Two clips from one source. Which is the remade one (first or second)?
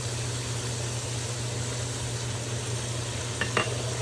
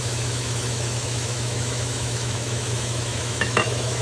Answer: second